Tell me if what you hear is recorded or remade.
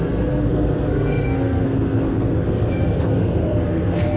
remade